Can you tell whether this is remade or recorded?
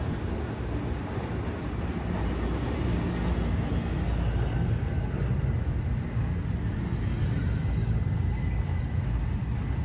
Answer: recorded